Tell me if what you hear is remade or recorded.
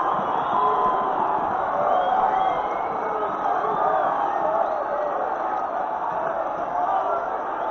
recorded